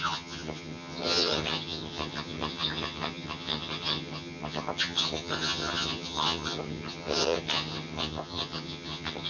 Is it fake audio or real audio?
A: fake